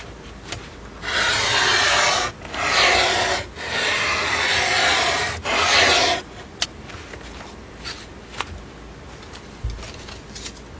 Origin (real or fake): real